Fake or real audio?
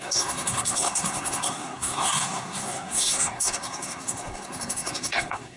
fake